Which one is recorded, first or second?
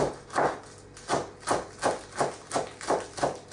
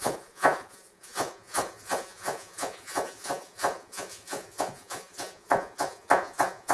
first